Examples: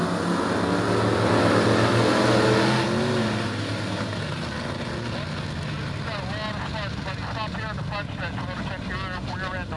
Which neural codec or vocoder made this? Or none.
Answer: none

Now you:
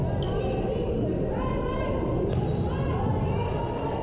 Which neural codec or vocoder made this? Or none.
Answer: none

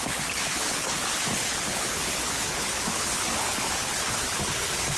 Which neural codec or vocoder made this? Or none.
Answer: codec, HILCodec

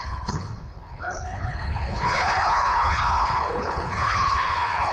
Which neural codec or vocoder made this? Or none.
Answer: codec, HILCodec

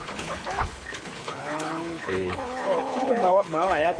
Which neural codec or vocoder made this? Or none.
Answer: codec, HILCodec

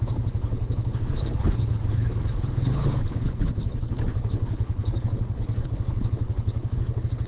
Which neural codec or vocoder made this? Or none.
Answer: codec, HILCodec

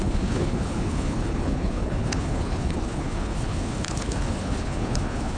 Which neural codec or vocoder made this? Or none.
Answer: codec, HILCodec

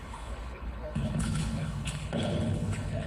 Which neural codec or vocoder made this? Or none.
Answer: codec, HILCodec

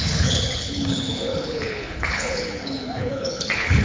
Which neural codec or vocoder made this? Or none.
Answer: codec, HILCodec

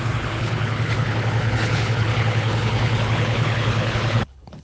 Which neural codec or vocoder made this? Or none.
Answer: codec, HILCodec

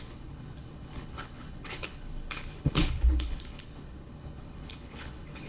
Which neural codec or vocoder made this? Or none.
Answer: codec, HILCodec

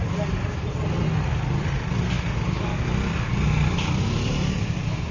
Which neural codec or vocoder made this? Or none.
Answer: none